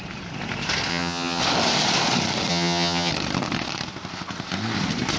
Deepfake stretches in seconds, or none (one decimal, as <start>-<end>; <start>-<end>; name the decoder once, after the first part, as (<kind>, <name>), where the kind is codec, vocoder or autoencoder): 0.9-1.4 (vocoder, HiFi-GAN); 2.5-3.1